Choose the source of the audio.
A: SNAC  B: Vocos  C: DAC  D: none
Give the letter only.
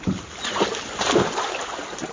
D